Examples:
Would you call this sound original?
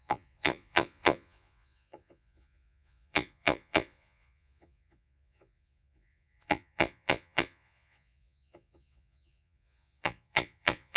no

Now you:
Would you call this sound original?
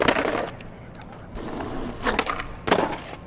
yes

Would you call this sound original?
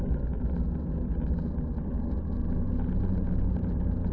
yes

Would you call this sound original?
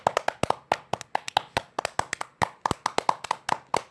yes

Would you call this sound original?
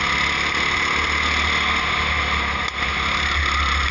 yes